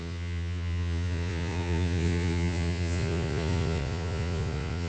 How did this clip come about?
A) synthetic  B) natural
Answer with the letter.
A